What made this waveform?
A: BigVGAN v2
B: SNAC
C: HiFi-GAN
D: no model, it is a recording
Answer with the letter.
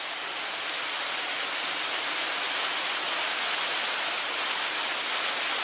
D